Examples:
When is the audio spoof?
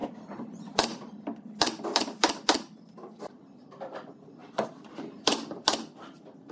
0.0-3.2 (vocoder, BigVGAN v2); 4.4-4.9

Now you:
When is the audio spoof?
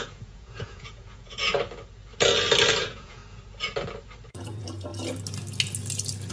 0.0-1.5 (vocoder, Vocos); 2.8-3.2; 4.3-4.9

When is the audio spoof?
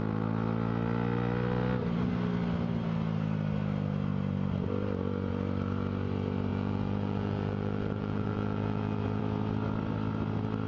6.5-9.2 (vocoder, Vocos)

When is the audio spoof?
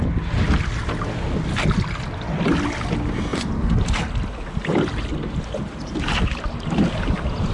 none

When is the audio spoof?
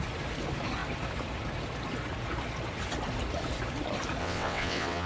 4.2-5.1 (vocoder, WaveNeXt)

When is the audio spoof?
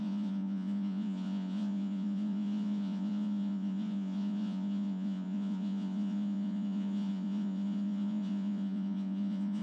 0.0-9.6 (vocoder, Vocos)